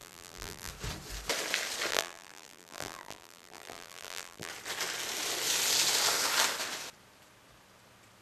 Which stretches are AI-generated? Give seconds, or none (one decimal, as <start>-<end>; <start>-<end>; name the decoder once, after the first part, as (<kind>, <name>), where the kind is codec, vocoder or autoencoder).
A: 0.0-0.7 (vocoder, BigVGAN v2); 1.9-4.5